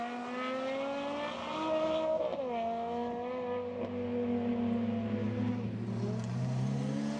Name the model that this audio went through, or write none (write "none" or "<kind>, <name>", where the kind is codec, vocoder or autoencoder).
none